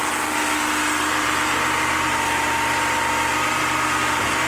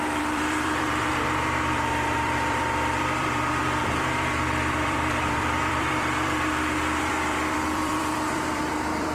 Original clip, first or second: first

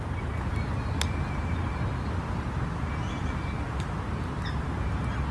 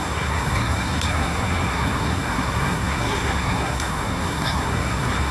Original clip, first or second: first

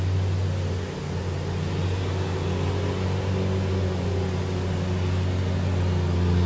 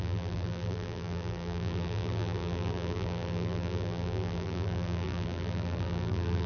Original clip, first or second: first